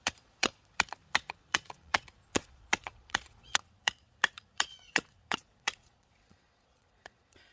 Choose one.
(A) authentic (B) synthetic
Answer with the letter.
B